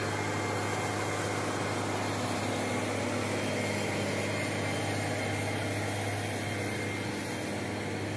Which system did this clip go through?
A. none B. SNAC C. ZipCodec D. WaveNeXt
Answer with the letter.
A